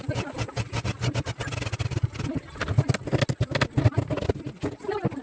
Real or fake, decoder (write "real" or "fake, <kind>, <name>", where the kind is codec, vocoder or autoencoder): real